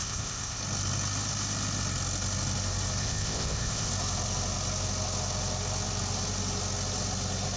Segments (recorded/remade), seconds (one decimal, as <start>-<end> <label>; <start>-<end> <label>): 0.0-0.6 remade; 0.6-3.0 recorded; 3.0-3.9 remade; 3.9-7.6 recorded